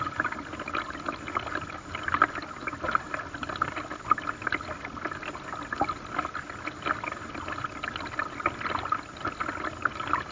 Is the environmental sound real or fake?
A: real